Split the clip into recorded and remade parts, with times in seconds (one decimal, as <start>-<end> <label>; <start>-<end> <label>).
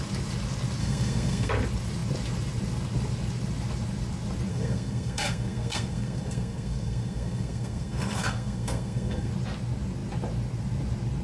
0.0-0.8 recorded; 0.8-1.5 remade; 1.5-4.5 recorded; 4.5-9.3 remade; 9.3-11.2 recorded